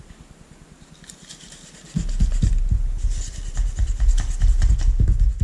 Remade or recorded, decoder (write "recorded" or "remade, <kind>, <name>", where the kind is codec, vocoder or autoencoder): recorded